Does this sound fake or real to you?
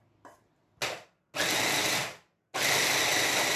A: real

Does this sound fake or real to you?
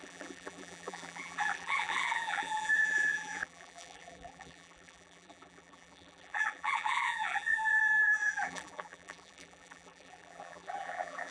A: fake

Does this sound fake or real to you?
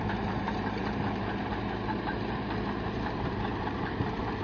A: fake